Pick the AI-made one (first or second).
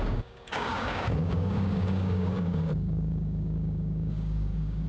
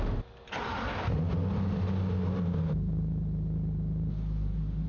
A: first